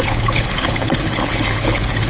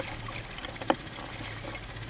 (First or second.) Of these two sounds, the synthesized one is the first